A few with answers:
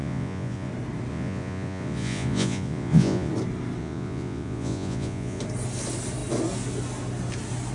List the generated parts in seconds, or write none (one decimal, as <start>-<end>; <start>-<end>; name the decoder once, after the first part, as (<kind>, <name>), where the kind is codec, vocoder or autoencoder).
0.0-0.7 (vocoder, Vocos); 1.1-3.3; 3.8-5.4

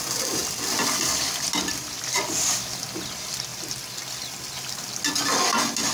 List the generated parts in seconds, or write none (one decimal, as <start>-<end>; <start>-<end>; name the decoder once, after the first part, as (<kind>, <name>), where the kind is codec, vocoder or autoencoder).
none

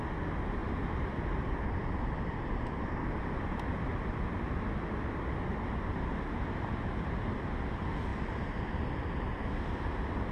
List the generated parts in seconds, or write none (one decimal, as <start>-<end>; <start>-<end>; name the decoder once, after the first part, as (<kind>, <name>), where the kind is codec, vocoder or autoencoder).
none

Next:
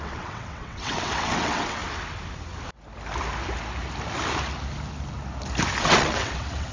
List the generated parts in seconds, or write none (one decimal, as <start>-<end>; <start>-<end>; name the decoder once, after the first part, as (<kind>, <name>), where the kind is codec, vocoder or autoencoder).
0.0-1.8 (vocoder, WaveNeXt); 5.8-6.7